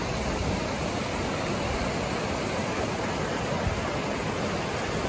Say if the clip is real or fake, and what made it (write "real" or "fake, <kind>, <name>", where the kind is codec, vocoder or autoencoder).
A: real